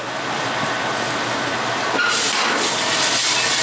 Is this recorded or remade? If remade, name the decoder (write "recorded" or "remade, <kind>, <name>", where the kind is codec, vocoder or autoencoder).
recorded